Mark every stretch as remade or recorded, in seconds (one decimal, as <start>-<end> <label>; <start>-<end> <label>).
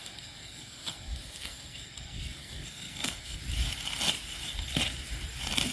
0.0-3.4 remade; 3.4-5.7 recorded